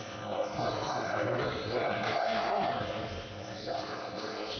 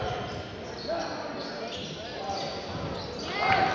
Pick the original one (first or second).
second